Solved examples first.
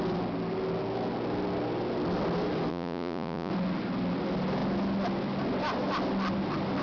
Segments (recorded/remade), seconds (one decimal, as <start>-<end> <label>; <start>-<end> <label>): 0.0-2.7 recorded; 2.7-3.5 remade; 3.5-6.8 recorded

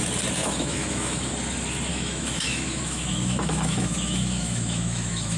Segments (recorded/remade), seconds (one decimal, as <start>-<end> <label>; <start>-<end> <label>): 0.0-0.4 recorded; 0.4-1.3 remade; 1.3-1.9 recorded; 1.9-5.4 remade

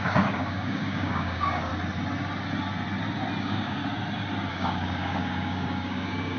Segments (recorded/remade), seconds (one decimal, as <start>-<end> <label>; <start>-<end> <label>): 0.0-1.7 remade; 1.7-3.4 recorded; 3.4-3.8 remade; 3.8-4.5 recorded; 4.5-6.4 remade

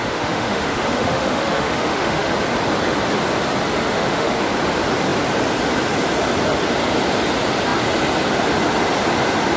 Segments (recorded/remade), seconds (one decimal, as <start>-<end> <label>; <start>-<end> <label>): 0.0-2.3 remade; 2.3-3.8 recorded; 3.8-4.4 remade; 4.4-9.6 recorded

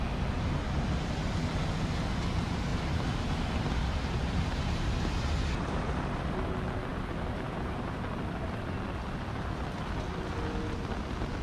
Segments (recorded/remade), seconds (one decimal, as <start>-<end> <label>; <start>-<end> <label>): 0.0-2.7 recorded; 2.7-6.5 remade; 6.5-6.9 recorded; 6.9-8.0 remade; 8.0-11.4 recorded

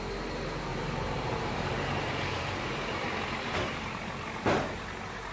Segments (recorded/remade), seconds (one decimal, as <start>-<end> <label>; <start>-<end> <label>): 0.0-0.7 recorded; 0.7-3.9 remade; 3.9-5.3 recorded

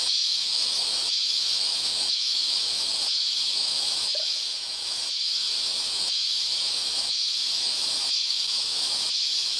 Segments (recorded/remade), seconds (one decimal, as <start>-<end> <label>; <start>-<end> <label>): 0.0-9.6 remade